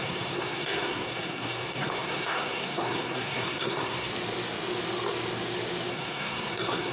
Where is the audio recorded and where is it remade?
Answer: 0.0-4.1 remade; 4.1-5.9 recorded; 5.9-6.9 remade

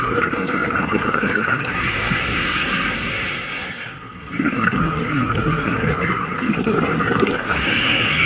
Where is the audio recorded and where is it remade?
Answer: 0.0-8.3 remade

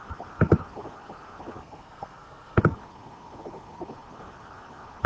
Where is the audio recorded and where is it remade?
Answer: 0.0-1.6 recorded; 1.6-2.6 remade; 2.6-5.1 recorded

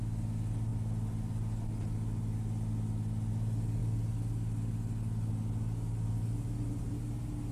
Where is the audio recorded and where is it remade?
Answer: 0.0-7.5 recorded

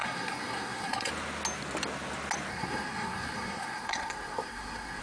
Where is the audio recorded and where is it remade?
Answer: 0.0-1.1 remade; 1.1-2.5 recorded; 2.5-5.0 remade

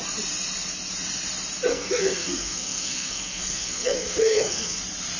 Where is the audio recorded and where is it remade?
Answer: 0.0-1.7 recorded; 1.7-4.8 remade; 4.8-5.2 recorded